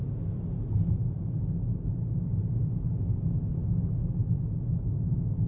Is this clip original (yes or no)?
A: yes